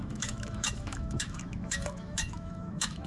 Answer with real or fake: fake